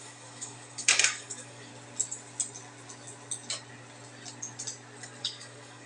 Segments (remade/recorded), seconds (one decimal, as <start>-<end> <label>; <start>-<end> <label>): 0.0-1.7 remade; 1.7-5.2 recorded; 5.2-5.9 remade